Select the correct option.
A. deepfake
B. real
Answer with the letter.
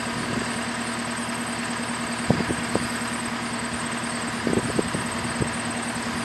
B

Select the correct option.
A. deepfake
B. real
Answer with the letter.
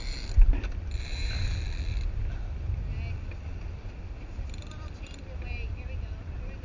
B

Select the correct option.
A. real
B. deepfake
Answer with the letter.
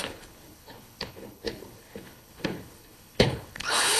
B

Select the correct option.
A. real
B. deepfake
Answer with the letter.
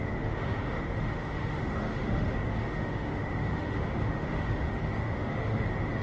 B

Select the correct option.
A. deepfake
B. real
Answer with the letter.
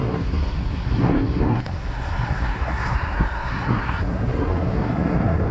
A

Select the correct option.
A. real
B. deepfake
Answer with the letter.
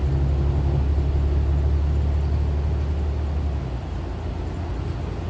A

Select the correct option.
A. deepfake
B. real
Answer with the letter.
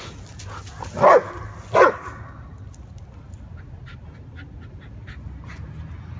B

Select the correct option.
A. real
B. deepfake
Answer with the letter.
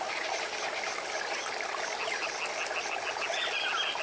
A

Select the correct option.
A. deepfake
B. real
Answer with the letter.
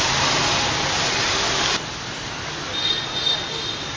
B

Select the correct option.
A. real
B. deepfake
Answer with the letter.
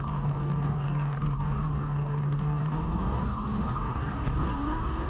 B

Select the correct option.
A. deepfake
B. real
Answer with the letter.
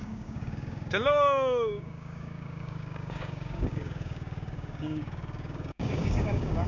A